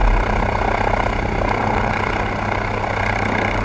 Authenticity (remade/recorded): recorded